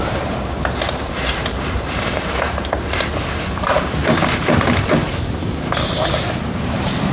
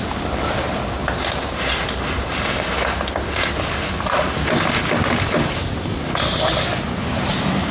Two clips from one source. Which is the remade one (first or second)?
first